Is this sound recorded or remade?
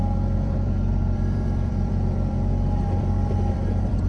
remade